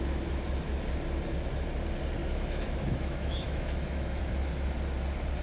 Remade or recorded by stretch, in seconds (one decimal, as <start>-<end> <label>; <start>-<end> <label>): 0.0-2.2 recorded; 2.2-4.2 remade; 4.2-5.4 recorded